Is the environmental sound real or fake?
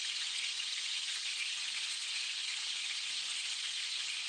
fake